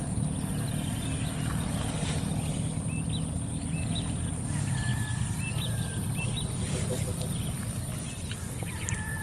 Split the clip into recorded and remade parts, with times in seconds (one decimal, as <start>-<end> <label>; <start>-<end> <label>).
0.0-9.2 recorded